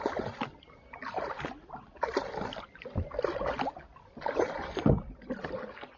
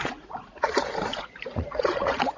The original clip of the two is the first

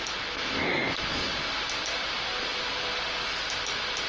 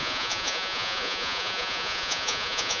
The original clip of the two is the first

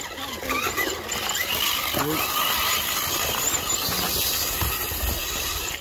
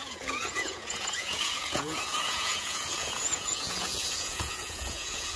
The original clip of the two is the first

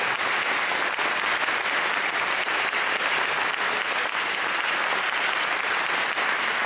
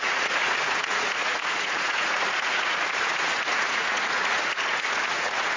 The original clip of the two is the first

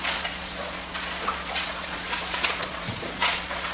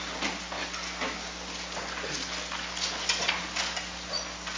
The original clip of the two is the second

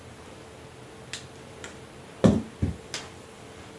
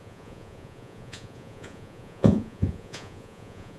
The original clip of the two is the first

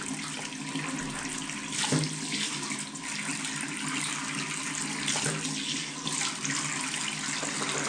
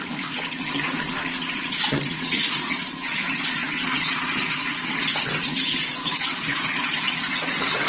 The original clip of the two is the first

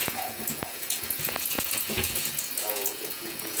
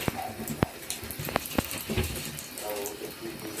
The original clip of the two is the second